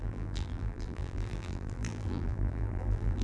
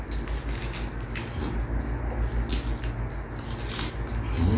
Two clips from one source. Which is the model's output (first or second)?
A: first